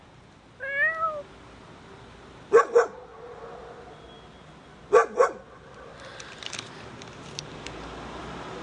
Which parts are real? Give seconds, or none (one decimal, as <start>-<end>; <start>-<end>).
0.0-8.6